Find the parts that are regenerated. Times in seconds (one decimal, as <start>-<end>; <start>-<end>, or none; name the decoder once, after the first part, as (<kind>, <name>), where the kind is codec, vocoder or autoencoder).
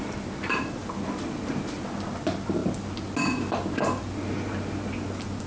none